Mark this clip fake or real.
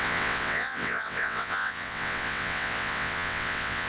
fake